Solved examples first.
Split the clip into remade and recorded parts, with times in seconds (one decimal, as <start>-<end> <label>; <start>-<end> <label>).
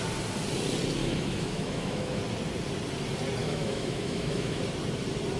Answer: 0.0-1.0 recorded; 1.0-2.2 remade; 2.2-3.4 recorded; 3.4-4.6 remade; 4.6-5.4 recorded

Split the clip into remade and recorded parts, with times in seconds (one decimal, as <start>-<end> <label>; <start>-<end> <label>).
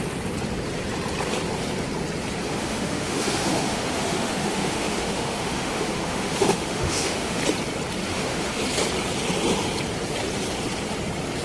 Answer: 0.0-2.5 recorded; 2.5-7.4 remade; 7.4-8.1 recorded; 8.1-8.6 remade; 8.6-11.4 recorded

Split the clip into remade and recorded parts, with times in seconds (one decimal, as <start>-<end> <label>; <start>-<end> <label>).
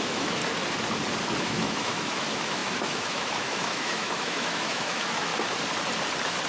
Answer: 0.0-0.4 remade; 0.4-1.4 recorded; 1.4-5.3 remade; 5.3-6.5 recorded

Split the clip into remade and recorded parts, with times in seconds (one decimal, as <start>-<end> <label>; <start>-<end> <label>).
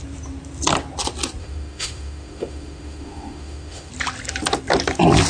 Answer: 0.0-1.4 recorded; 1.4-3.9 remade; 3.9-5.3 recorded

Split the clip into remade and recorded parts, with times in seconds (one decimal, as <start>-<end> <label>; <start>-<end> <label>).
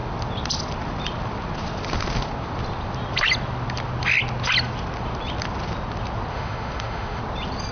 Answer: 0.0-6.3 recorded; 6.3-7.2 remade; 7.2-7.7 recorded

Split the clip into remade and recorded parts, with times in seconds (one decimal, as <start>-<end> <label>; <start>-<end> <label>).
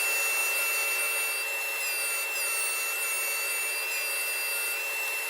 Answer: 0.0-5.3 recorded